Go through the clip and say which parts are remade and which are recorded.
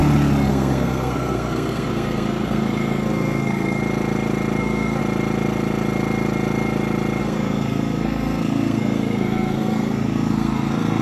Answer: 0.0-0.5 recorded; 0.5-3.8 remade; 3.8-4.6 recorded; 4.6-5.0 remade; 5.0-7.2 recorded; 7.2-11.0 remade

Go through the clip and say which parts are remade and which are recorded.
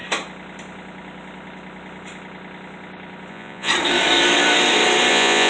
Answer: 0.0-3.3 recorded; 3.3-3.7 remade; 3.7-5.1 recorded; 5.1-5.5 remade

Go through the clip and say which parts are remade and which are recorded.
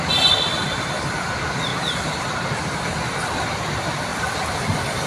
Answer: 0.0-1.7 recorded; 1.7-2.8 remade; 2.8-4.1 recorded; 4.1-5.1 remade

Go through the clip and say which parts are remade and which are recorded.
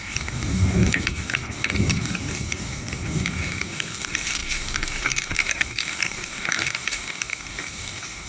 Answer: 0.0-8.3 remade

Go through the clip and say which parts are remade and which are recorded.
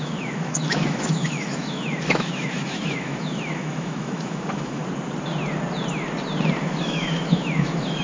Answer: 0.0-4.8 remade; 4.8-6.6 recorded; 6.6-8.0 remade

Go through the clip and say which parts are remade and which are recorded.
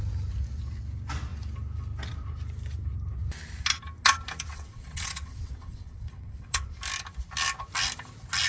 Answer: 0.0-4.5 recorded; 4.5-6.7 remade; 6.7-8.5 recorded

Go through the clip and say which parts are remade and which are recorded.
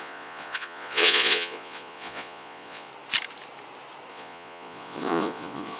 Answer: 0.0-2.9 remade; 2.9-4.1 recorded; 4.1-5.8 remade